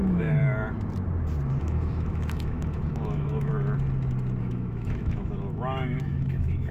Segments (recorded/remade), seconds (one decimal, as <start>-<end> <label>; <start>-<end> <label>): 0.0-0.4 remade; 0.4-1.6 recorded; 1.6-3.5 remade; 3.5-4.4 recorded; 4.4-6.7 remade